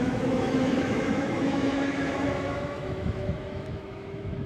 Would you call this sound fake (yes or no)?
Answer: yes